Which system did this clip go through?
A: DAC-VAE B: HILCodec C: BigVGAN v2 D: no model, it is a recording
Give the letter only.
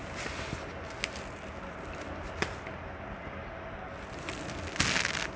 D